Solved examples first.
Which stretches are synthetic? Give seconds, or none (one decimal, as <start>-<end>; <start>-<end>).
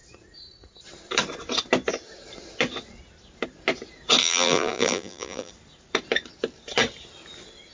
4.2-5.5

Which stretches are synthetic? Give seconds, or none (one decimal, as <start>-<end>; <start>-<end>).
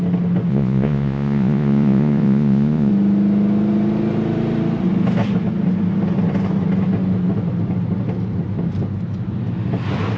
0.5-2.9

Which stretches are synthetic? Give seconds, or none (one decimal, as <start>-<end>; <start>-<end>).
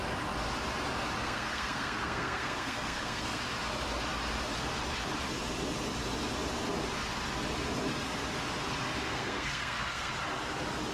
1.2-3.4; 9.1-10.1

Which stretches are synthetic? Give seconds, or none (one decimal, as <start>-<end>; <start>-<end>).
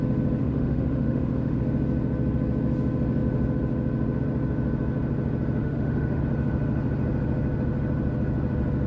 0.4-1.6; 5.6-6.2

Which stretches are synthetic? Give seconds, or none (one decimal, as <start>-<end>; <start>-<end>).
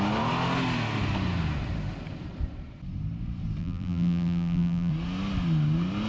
3.6-4.9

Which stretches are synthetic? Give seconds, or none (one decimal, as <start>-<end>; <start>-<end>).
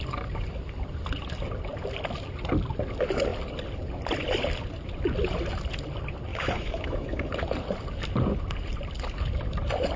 6.3-7.3